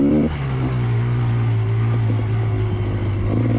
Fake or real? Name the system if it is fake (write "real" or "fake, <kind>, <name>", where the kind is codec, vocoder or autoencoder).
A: real